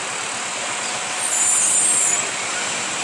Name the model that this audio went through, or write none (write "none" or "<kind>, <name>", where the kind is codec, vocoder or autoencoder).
none